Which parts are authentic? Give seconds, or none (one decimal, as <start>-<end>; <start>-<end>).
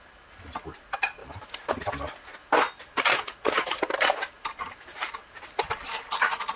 0.0-1.2; 1.7-2.4